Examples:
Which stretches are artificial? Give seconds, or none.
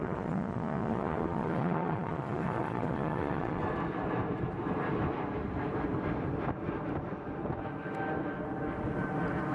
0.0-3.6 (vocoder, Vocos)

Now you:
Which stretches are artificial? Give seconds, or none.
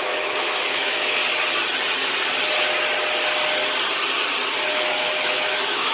0.0-1.2 (autoencoder, DAC-VAE); 4.7-5.9